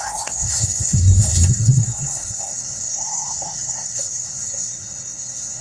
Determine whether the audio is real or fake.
fake